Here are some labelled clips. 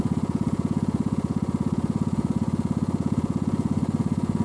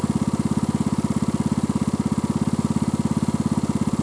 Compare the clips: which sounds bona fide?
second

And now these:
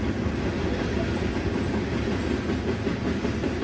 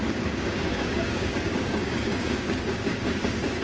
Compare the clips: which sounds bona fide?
first